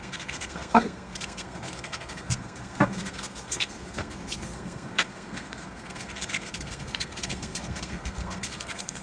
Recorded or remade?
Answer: remade